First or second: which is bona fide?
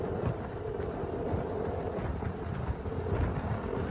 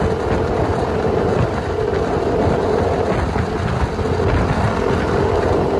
second